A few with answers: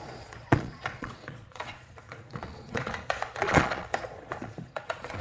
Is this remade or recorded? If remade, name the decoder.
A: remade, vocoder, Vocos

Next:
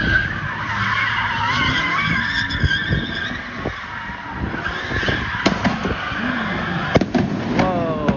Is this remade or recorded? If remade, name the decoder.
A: recorded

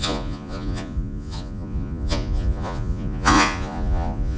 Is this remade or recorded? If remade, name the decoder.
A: remade, vocoder, Vocos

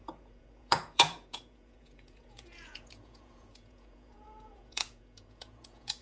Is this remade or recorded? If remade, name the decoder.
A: remade, vocoder, Vocos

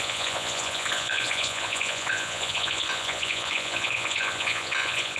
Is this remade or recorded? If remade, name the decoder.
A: remade, vocoder, Vocos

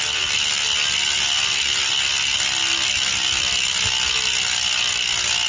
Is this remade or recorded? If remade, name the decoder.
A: recorded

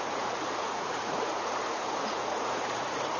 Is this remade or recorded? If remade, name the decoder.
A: remade, vocoder, Vocos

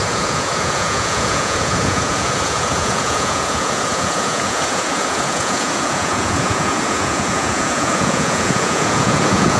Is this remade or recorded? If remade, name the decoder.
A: remade, vocoder, Vocos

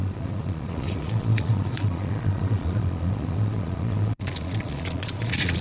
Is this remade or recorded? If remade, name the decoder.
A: remade, vocoder, Vocos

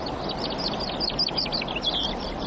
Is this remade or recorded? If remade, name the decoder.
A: recorded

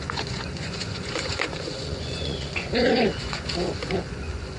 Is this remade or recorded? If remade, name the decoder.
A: remade, vocoder, Vocos